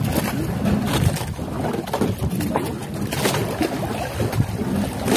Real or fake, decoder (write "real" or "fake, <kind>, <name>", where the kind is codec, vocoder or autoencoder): real